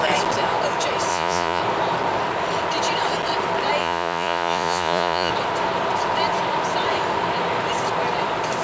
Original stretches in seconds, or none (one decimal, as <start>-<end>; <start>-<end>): 0.0-1.1; 1.6-3.8; 5.3-8.6